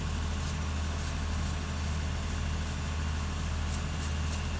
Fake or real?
real